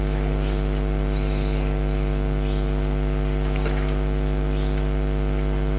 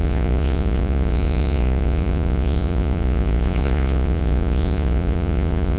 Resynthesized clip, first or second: second